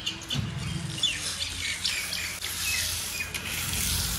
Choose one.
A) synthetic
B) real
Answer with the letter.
B